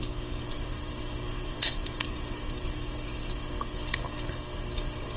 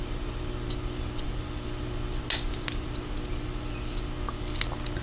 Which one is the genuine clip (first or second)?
second